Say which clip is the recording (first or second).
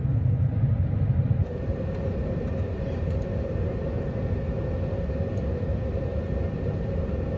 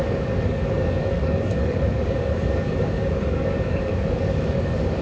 first